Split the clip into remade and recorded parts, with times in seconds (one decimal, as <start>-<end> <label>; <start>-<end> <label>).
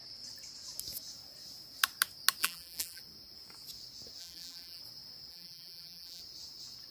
0.0-2.4 recorded; 2.4-3.0 remade; 3.0-4.2 recorded; 4.2-4.8 remade; 4.8-5.3 recorded; 5.3-6.2 remade; 6.2-6.9 recorded